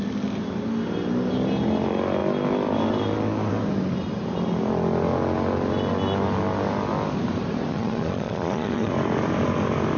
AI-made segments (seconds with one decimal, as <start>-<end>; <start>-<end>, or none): 7.7-8.9